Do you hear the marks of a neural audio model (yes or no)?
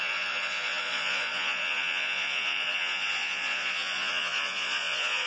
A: yes